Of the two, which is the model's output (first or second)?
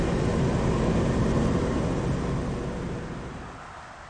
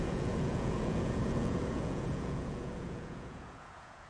second